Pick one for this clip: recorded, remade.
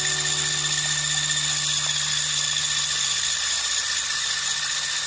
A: recorded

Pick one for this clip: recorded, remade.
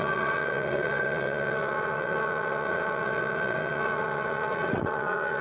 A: remade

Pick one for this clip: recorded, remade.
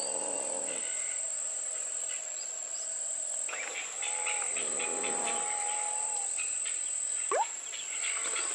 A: recorded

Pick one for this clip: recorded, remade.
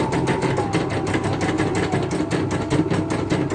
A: recorded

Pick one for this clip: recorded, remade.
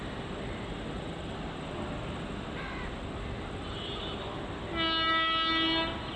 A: recorded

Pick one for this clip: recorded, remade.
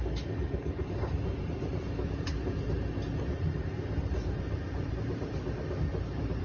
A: recorded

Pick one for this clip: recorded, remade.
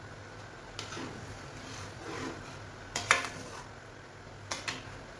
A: recorded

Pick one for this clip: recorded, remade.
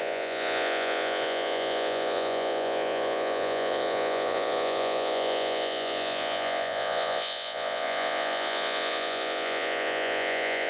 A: remade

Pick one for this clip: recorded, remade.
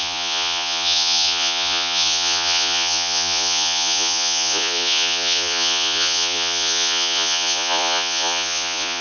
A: remade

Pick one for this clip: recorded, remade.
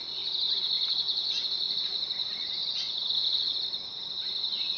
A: recorded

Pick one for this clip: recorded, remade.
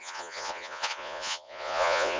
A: remade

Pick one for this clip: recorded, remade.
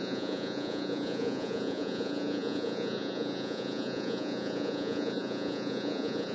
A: remade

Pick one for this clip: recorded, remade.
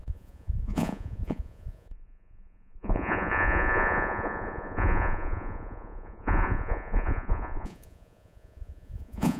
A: remade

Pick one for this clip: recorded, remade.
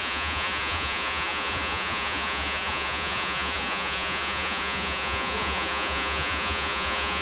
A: remade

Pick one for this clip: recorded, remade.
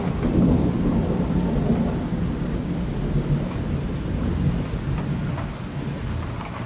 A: recorded